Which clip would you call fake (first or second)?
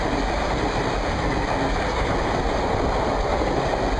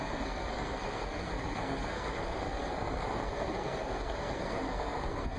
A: second